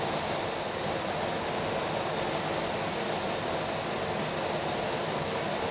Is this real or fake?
real